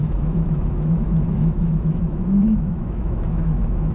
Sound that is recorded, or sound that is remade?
remade